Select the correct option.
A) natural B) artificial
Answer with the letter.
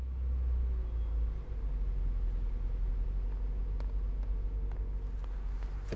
A